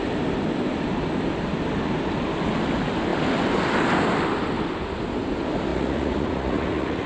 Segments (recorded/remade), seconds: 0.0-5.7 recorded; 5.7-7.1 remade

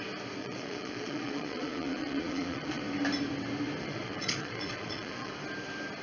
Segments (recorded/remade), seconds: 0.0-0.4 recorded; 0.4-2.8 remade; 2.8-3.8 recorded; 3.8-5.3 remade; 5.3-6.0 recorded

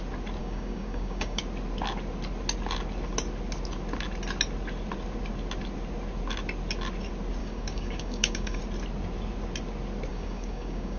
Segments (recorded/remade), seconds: 0.0-0.4 recorded; 0.4-1.4 remade; 1.4-7.4 recorded; 7.4-8.6 remade; 8.6-10.1 recorded; 10.1-11.0 remade

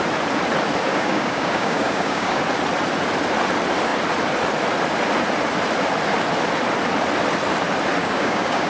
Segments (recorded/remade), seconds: 0.0-0.9 recorded; 0.9-2.4 remade; 2.4-8.0 recorded; 8.0-8.7 remade

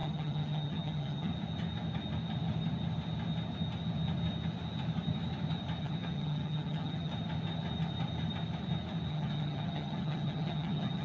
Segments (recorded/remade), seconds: 0.0-1.3 remade; 1.3-5.8 recorded; 5.8-7.1 remade; 7.1-9.1 recorded; 9.1-11.0 remade

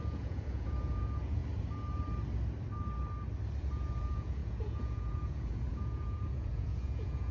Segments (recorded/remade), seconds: 0.0-1.4 remade; 1.4-3.6 recorded; 3.6-7.3 remade

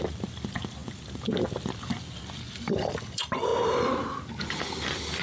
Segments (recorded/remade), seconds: 0.0-3.5 remade; 3.5-4.5 recorded; 4.5-5.2 remade